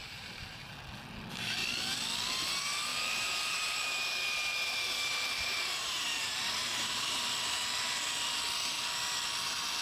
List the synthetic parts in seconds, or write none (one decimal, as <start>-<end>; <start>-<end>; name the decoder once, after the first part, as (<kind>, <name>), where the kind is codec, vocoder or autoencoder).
0.0-0.7 (vocoder, BigVGAN v2); 2.9-7.2